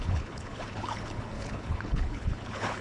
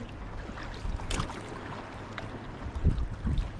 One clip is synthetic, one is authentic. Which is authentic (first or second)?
second